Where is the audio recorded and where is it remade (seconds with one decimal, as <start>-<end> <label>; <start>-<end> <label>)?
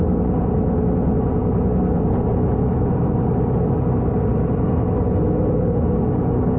0.0-4.3 recorded; 4.3-5.0 remade; 5.0-6.6 recorded